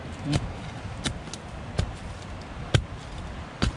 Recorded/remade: recorded